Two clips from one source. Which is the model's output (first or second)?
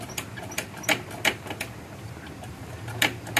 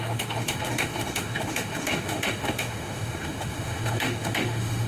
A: second